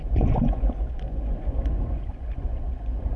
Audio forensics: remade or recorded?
remade